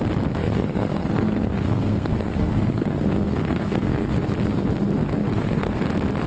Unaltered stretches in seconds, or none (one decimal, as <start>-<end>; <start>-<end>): 0.0-0.4; 4.2-5.3; 5.8-6.3